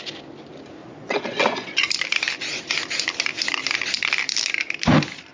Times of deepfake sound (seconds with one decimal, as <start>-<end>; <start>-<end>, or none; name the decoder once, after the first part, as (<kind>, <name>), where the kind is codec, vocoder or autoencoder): 0.8-1.8 (vocoder, Vocos)